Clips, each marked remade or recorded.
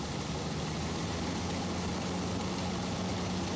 recorded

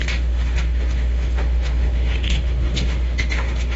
remade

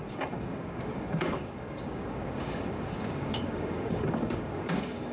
remade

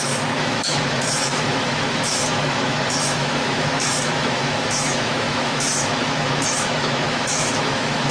remade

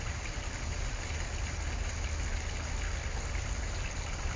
recorded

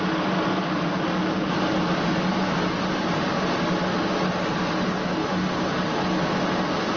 recorded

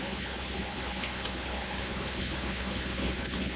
remade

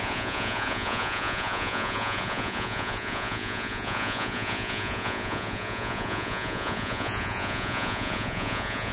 remade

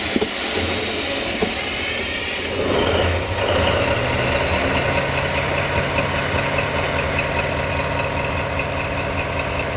recorded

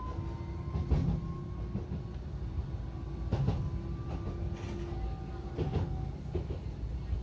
recorded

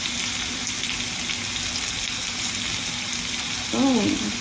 recorded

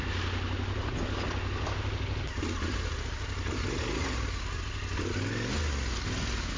recorded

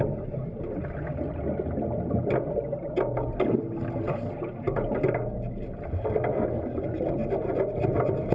recorded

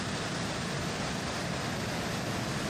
recorded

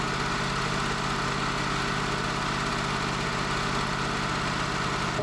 recorded